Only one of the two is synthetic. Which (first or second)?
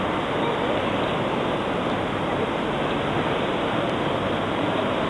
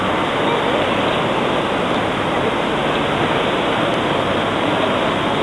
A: first